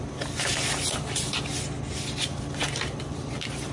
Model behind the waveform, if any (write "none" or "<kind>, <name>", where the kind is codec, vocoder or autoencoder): none